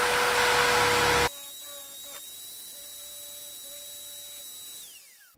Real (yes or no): yes